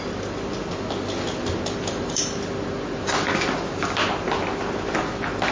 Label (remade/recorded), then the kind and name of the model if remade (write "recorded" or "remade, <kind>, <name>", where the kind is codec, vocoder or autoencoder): recorded